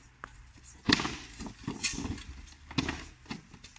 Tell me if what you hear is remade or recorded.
recorded